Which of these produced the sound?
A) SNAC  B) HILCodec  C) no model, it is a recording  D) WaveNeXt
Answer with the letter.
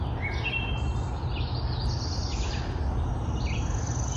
C